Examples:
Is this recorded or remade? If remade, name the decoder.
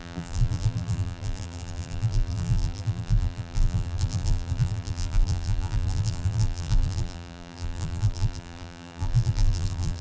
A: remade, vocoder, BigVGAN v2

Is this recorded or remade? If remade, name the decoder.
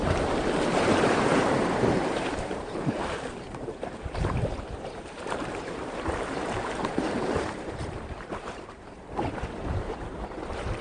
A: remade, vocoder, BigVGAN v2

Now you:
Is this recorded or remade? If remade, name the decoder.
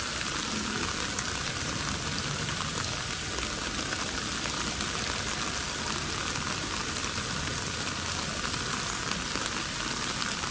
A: recorded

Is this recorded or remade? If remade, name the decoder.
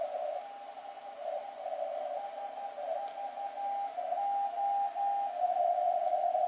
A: recorded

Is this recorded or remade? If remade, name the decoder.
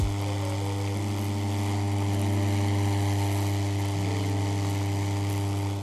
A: recorded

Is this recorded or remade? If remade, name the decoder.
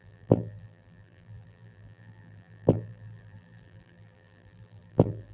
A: remade, vocoder, BigVGAN v2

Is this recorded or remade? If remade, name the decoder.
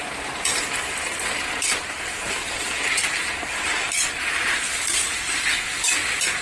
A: remade, vocoder, BigVGAN v2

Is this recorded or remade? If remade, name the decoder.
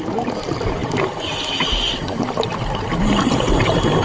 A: recorded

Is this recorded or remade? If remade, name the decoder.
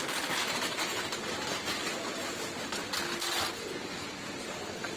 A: recorded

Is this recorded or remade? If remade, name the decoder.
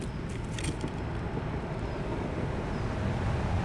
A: recorded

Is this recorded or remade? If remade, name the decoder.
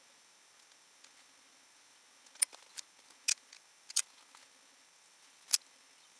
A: recorded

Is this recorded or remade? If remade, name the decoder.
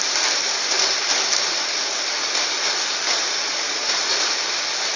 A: recorded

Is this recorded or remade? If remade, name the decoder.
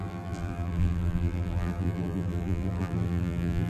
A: remade, vocoder, BigVGAN v2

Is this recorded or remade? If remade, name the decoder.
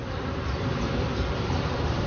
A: remade, vocoder, BigVGAN v2